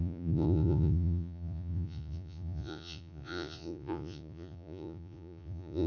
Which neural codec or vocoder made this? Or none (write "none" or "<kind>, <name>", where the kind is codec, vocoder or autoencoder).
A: vocoder, Vocos